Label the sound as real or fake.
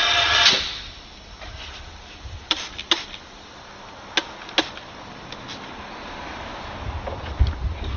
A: real